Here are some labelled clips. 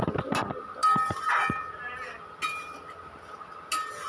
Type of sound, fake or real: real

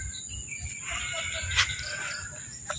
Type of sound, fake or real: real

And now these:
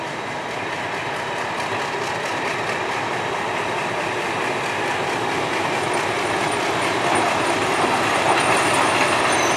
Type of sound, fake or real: real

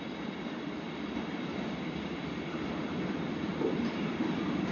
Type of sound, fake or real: fake